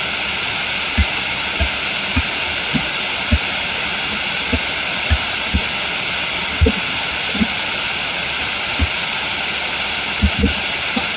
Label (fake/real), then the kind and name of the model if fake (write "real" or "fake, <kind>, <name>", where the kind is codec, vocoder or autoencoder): real